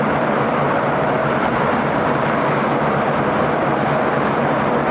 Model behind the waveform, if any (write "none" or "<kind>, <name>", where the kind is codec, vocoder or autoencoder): vocoder, BigVGAN v2